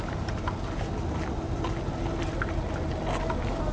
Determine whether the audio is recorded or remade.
recorded